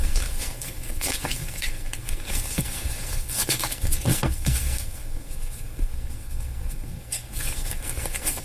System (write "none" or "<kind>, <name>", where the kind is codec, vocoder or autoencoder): codec, SNAC